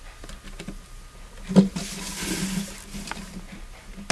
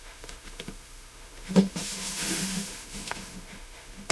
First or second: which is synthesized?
second